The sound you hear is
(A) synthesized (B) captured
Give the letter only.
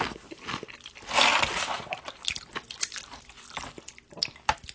B